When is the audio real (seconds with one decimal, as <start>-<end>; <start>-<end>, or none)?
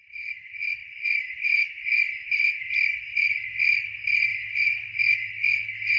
0.0-0.8; 2.6-4.3; 5.1-6.0